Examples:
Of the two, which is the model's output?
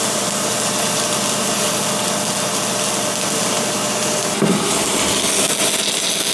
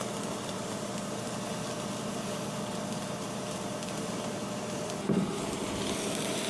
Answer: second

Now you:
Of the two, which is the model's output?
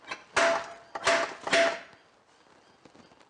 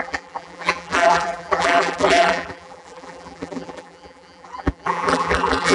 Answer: second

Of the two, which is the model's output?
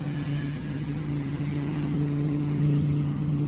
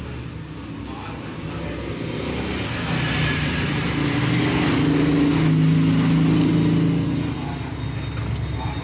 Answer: first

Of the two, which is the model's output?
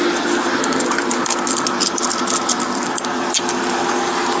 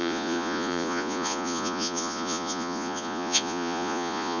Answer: second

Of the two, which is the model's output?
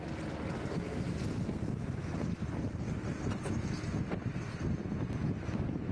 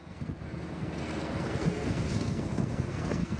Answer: second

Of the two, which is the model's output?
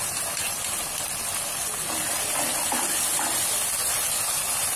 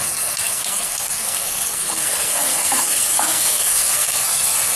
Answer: second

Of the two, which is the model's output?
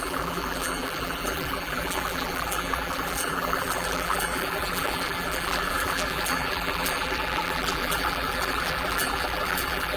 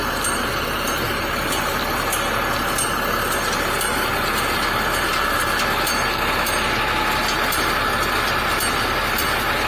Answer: first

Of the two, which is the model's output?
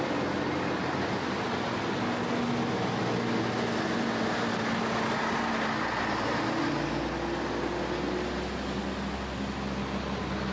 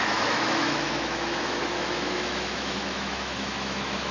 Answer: second